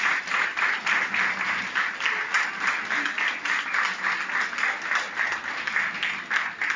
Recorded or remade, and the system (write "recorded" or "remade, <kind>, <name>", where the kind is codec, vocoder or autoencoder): recorded